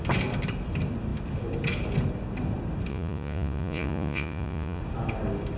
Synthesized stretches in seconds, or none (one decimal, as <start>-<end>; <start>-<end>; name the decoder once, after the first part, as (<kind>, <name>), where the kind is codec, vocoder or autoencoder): 2.9-4.8 (vocoder, Vocos)